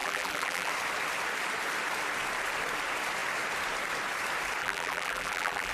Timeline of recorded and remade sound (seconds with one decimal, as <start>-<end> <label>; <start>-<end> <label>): 0.0-0.7 remade; 0.7-4.6 recorded; 4.6-5.7 remade